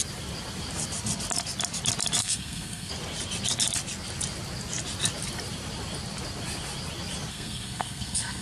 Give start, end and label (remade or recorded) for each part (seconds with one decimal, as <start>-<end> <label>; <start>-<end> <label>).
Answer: 0.0-2.2 recorded; 2.2-2.9 remade; 2.9-7.3 recorded; 7.3-8.4 remade